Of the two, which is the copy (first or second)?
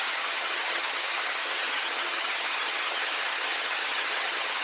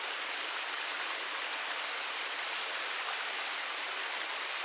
first